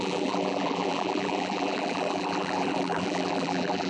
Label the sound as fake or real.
fake